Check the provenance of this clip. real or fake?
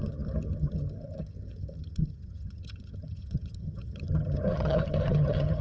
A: fake